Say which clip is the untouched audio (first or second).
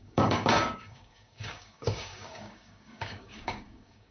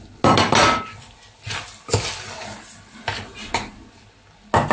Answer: second